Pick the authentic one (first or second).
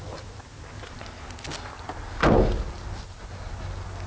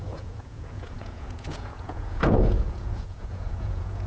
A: first